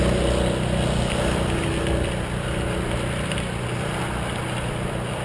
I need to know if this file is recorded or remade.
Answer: recorded